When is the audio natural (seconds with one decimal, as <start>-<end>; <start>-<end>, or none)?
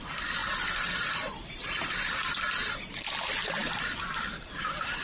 0.0-0.4; 2.4-3.6